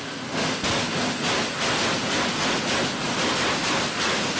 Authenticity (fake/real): real